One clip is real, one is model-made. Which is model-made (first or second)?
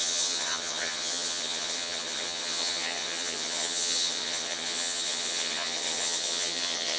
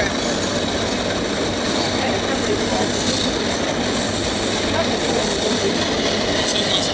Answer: first